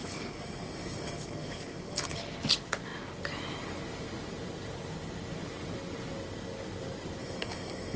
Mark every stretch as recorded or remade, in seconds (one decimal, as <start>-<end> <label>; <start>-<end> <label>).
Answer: 0.0-2.2 remade; 2.2-7.2 recorded; 7.2-8.0 remade